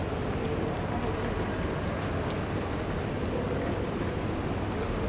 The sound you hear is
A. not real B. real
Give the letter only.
B